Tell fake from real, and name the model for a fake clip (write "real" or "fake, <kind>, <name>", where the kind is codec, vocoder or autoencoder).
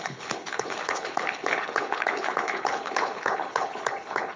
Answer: fake, codec, HILCodec